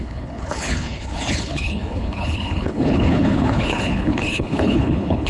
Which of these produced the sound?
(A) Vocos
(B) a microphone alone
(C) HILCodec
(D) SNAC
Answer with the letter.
C